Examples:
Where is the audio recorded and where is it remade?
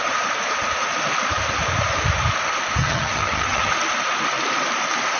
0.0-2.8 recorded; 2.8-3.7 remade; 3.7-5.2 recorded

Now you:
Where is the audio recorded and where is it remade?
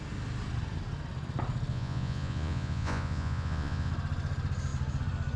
0.0-1.7 recorded; 1.7-3.9 remade; 3.9-5.4 recorded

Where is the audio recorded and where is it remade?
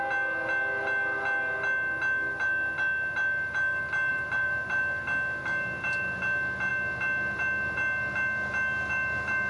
0.0-4.1 recorded; 4.1-4.8 remade; 4.8-9.5 recorded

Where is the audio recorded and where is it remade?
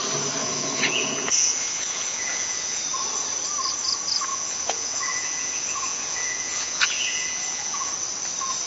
0.0-0.4 recorded; 0.4-2.8 remade; 2.8-4.3 recorded; 4.3-7.9 remade; 7.9-8.7 recorded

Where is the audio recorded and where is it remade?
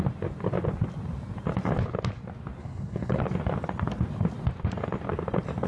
0.0-2.6 recorded; 2.6-3.2 remade; 3.2-5.7 recorded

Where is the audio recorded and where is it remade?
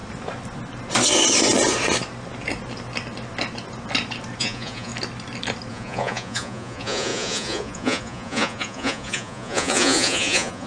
0.0-4.4 recorded; 4.4-4.9 remade; 4.9-5.7 recorded; 5.7-10.7 remade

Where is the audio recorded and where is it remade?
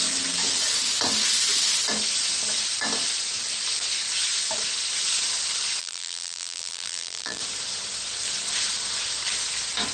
0.0-5.8 recorded; 5.8-7.4 remade; 7.4-9.9 recorded